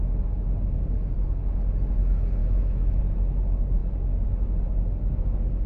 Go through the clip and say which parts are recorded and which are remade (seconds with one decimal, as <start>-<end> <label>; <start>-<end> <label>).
0.0-2.4 recorded; 2.4-3.0 remade; 3.0-5.7 recorded